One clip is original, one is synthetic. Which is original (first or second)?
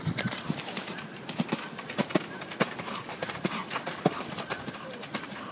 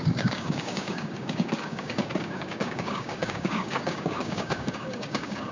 first